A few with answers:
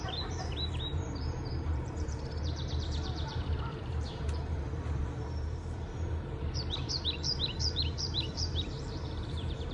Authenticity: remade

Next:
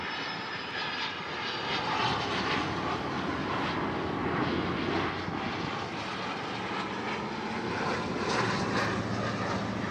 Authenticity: recorded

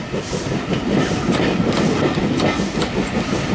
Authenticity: recorded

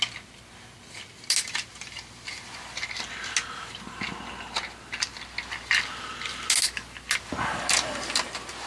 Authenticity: recorded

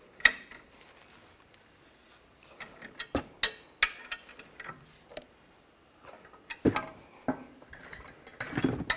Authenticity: recorded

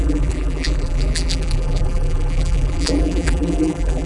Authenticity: remade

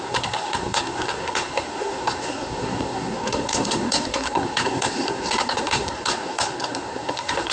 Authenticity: remade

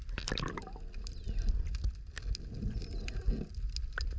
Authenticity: recorded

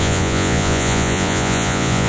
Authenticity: remade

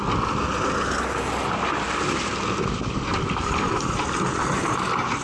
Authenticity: recorded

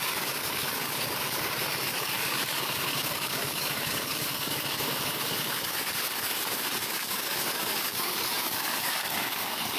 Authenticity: remade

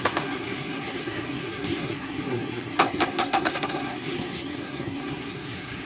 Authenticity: remade